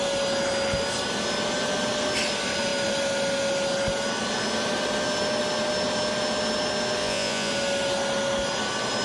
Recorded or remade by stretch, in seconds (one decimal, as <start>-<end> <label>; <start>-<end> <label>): 0.0-7.0 recorded; 7.0-7.5 remade; 7.5-9.0 recorded